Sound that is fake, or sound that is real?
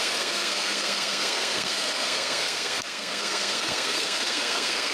fake